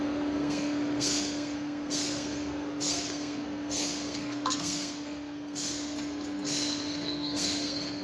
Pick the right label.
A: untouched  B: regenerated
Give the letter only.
B